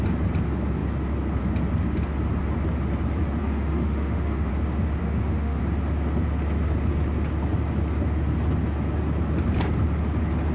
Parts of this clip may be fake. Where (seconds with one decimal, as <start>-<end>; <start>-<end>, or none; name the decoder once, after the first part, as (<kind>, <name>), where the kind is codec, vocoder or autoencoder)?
3.4-4.5 (autoencoder, DAC-VAE); 5.0-5.6